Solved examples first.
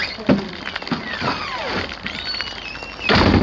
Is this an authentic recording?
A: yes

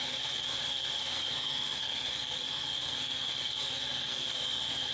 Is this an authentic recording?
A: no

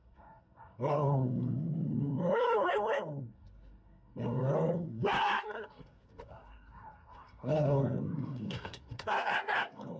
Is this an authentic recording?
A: no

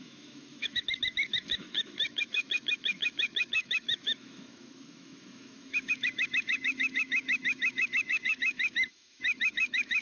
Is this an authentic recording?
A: no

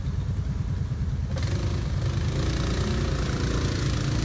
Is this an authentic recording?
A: yes